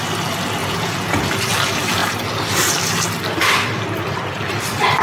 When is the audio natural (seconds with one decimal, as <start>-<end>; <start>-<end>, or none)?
0.0-0.6; 1.2-5.0